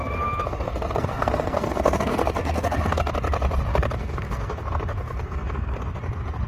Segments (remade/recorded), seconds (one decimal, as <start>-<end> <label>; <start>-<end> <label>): 0.0-3.1 remade; 3.1-3.7 recorded; 3.7-6.0 remade; 6.0-6.5 recorded